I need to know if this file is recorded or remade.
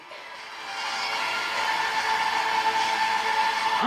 recorded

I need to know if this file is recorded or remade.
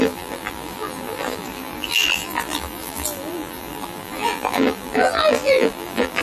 remade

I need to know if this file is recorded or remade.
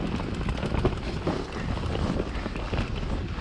recorded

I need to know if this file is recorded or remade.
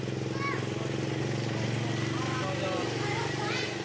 recorded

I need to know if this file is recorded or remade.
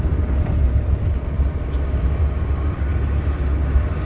recorded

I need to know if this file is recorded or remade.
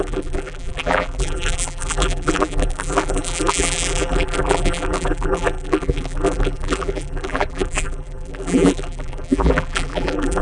remade